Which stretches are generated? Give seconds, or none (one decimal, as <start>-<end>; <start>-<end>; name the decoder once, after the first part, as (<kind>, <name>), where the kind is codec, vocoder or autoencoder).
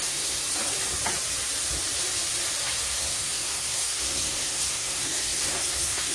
0.0-0.4 (codec, SNAC); 2.8-6.1